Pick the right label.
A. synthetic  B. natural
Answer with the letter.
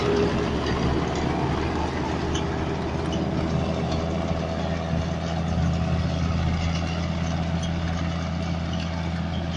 B